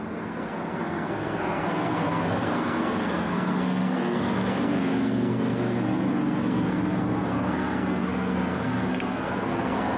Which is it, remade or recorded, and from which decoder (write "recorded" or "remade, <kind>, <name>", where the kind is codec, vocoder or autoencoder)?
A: remade, codec, SNAC